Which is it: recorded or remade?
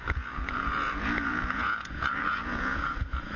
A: remade